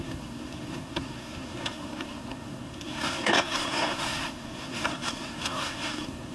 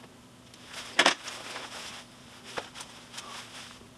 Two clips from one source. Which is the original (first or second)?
second